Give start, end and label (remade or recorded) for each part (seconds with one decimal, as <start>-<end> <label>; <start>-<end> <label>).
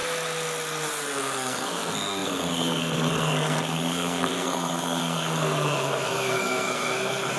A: 0.0-1.2 recorded; 1.2-7.4 remade